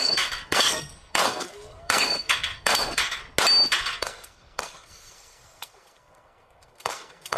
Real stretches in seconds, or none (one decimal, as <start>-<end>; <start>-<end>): 3.2-3.8